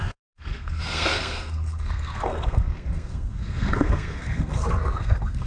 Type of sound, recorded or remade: remade